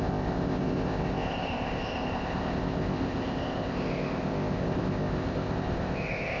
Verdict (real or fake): fake